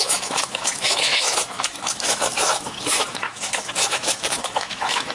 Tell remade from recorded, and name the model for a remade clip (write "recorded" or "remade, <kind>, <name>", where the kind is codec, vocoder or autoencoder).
remade, autoencoder, DAC-VAE